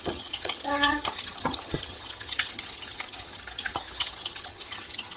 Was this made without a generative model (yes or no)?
no